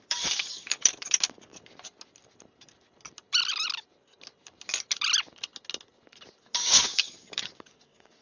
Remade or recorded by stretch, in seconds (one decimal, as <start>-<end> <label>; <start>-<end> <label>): 0.0-1.5 remade; 1.5-6.4 recorded; 6.4-8.2 remade